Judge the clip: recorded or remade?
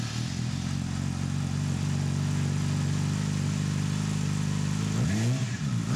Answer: recorded